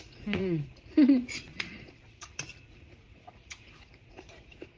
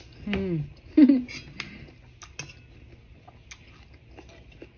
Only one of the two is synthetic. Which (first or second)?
first